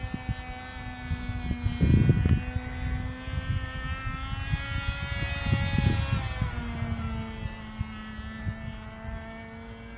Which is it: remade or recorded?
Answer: recorded